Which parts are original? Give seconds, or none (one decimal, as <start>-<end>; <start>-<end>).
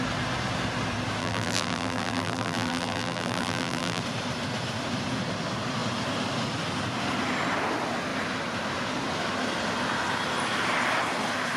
0.0-1.2; 4.0-11.6